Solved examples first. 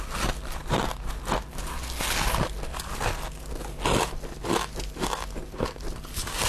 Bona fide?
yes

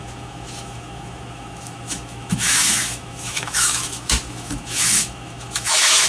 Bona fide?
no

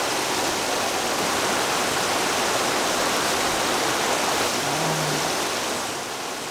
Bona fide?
yes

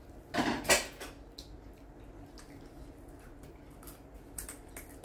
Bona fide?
yes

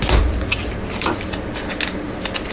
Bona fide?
yes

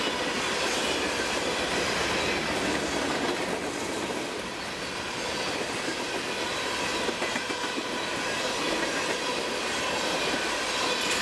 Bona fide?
yes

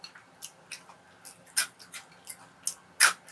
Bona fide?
yes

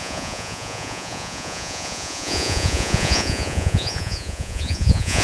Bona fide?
no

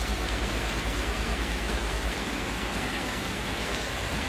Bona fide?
no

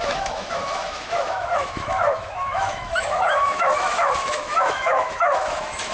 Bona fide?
no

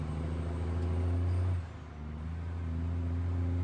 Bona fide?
yes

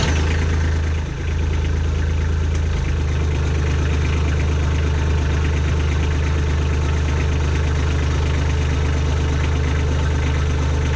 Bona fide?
yes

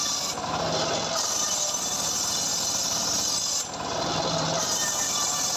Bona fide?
yes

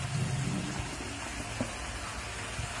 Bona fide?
yes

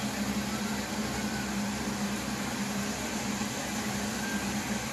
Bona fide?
yes